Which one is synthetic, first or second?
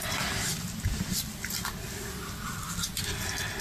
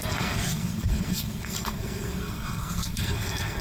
second